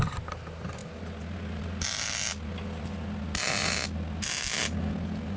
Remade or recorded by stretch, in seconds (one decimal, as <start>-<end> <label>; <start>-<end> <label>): 0.0-5.4 recorded